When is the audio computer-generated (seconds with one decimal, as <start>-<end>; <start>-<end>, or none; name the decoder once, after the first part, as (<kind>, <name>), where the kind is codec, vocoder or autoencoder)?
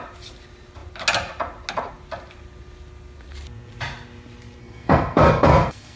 4.6-6.0 (codec, SNAC)